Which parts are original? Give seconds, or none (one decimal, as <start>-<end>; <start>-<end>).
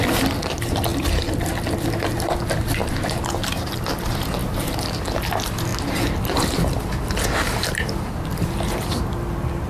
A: 0.0-9.7